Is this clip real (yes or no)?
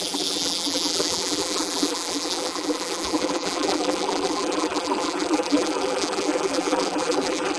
no